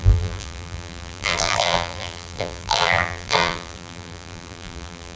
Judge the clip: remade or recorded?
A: remade